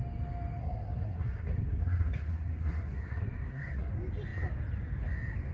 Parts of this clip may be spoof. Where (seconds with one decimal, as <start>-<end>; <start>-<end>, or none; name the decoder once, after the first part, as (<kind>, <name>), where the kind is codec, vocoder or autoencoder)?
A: 0.6-3.9 (codec, SNAC)